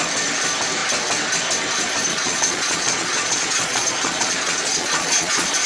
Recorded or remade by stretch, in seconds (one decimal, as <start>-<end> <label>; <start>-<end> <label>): 0.0-2.1 recorded; 2.1-5.7 remade